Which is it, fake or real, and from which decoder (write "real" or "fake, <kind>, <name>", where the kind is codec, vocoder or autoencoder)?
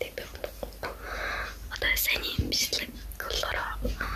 real